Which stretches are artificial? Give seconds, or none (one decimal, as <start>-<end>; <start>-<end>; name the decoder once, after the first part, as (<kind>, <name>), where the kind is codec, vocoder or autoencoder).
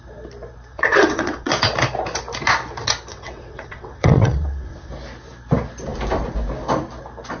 0.7-1.5 (vocoder, WaveNeXt); 3.1-4.9